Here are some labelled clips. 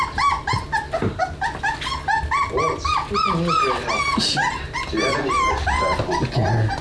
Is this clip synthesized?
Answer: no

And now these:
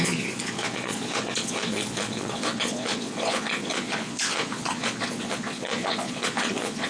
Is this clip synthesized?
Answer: yes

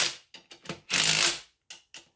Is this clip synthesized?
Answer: no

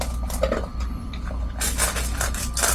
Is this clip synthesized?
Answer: no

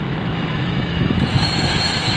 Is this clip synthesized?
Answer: yes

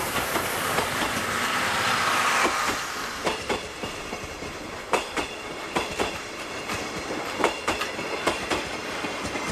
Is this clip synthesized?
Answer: yes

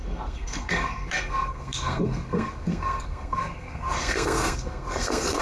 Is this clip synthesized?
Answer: yes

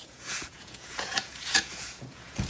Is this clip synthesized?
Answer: yes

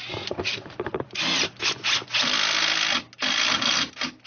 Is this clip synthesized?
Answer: no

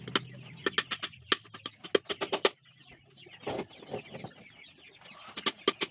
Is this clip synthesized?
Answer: no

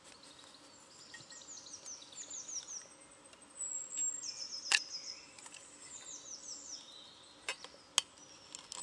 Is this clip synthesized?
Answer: no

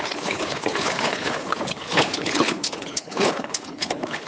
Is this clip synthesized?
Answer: yes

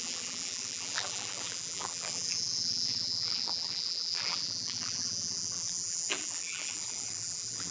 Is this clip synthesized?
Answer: yes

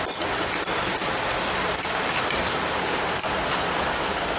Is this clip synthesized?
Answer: no